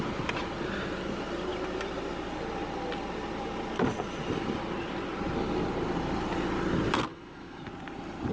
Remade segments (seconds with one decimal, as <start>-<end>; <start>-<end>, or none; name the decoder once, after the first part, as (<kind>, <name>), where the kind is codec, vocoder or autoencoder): 7.1-7.6 (autoencoder, DAC-VAE)